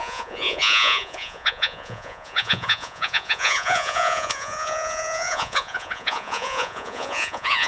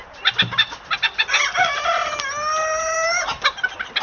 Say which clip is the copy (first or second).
first